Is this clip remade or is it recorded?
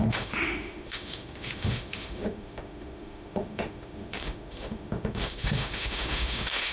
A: remade